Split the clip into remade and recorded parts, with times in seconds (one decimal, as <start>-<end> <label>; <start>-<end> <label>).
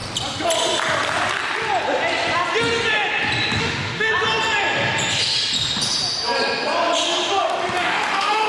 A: 0.0-3.6 recorded; 3.6-4.1 remade; 4.1-7.8 recorded; 7.8-8.5 remade